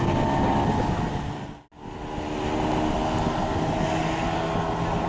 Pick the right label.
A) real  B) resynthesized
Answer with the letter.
A